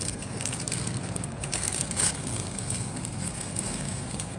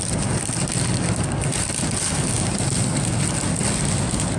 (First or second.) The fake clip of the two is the first